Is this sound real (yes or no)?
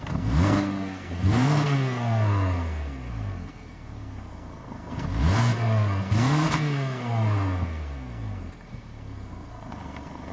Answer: no